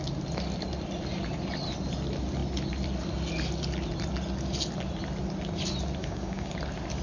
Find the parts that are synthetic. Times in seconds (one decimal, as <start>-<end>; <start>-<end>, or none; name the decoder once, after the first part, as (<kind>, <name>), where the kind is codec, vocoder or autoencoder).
6.0-6.5 (codec, DAC)